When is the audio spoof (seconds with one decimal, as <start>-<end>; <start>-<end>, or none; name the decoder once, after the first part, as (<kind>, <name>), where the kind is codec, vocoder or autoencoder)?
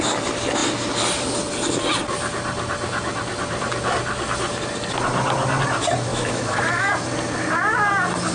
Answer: 6.1-6.9 (autoencoder, DAC-VAE)